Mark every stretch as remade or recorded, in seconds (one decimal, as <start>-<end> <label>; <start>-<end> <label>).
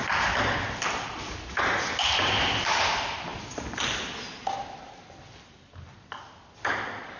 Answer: 0.0-7.2 recorded